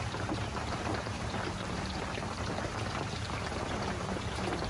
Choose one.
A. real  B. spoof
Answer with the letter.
B